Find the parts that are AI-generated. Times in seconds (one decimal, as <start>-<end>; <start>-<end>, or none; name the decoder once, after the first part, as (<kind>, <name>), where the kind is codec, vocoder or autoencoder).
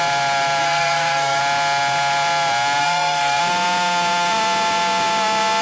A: 0.6-1.4 (codec, SNAC); 2.8-3.4